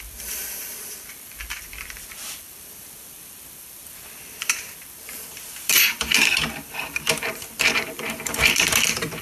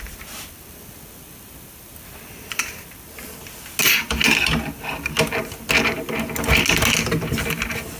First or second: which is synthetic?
first